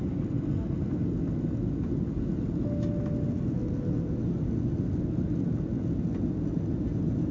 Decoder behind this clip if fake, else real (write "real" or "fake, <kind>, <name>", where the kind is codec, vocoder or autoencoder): real